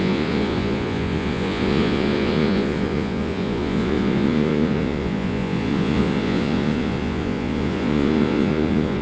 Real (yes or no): no